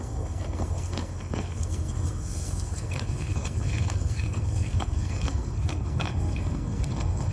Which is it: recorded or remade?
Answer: remade